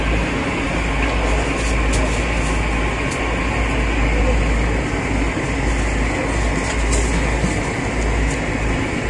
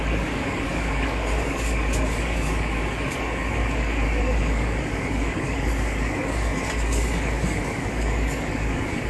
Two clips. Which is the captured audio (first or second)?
first